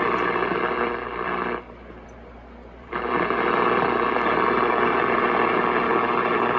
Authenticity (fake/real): fake